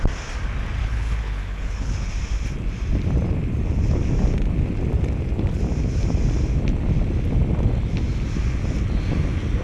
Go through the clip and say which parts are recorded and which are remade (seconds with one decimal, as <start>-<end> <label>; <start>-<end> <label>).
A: 0.0-0.8 recorded; 0.8-2.1 remade; 2.1-9.6 recorded